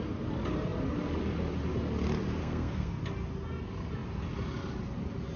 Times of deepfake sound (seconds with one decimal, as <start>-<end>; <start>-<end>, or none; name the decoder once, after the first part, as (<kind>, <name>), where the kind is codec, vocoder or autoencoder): 2.4-3.0 (codec, SNAC)